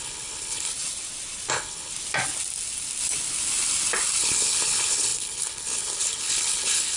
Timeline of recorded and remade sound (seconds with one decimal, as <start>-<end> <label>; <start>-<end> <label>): 0.0-0.7 remade; 0.7-1.5 recorded; 1.5-1.9 remade; 1.9-4.2 recorded; 4.2-7.0 remade